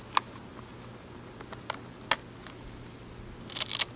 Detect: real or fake real